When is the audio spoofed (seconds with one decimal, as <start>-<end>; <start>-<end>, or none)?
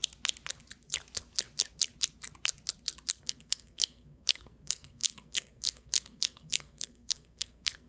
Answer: 3.2-7.9